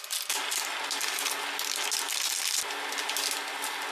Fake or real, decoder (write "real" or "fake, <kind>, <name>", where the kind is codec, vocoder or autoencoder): real